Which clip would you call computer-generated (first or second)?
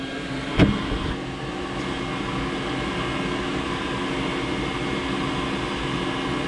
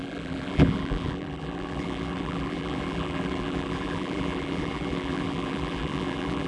second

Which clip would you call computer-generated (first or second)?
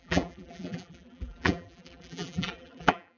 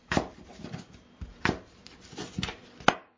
first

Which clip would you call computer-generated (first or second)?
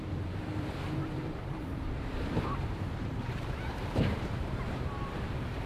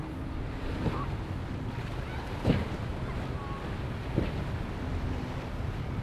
first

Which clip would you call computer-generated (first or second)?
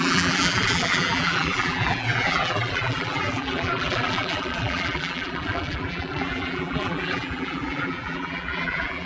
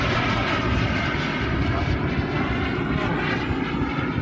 first